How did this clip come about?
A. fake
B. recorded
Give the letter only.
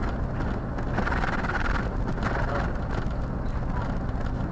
B